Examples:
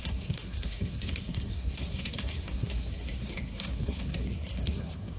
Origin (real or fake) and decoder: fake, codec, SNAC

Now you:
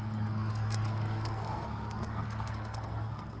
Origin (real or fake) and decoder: fake, codec, SNAC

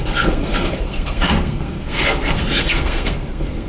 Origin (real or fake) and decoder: fake, codec, SNAC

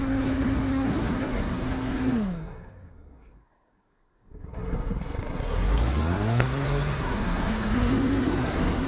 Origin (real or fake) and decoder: fake, codec, SNAC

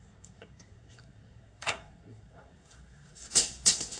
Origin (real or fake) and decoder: fake, codec, SNAC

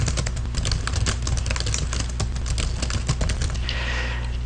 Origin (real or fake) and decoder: real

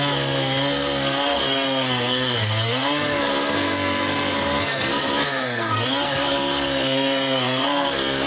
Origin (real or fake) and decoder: fake, codec, SNAC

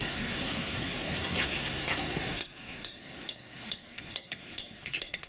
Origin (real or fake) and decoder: fake, codec, SNAC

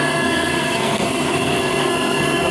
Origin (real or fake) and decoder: fake, codec, SNAC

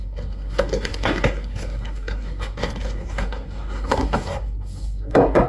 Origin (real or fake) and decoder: fake, codec, SNAC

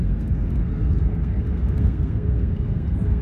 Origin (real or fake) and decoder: fake, codec, SNAC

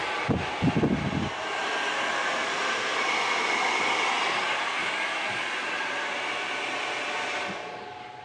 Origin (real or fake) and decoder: real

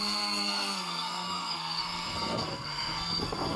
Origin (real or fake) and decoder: fake, codec, SNAC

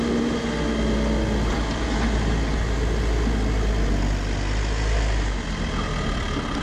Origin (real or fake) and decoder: real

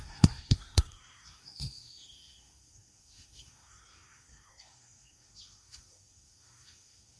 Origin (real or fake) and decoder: fake, codec, SNAC